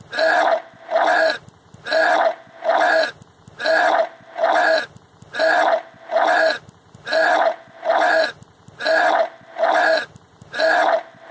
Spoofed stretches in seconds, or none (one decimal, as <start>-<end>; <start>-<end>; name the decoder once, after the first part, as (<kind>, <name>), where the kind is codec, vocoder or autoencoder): none